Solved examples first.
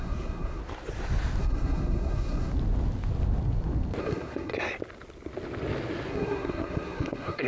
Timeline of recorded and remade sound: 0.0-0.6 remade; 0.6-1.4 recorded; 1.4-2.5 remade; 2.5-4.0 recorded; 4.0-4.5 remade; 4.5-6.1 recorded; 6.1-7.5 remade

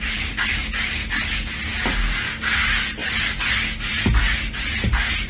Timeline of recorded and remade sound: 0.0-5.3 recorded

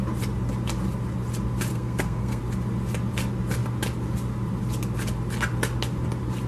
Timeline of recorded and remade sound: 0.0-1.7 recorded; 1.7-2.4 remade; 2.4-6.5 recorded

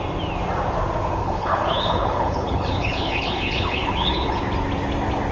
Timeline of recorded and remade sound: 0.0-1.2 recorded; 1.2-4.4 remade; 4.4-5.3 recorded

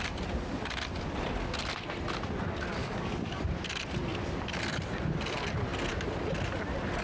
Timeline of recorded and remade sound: 0.0-2.8 recorded; 2.8-3.4 remade; 3.4-7.0 recorded

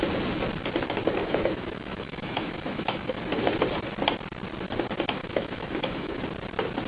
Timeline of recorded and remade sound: 0.0-1.2 recorded; 1.2-3.2 remade; 3.2-5.2 recorded; 5.2-6.2 remade; 6.2-6.9 recorded